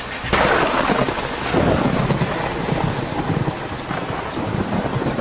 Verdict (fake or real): real